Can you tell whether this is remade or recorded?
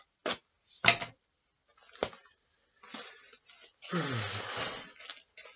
recorded